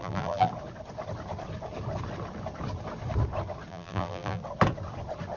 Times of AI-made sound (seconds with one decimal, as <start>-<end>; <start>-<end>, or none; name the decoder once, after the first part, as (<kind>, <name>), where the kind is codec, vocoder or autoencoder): 0.0-0.5 (vocoder, BigVGAN v2); 3.7-4.4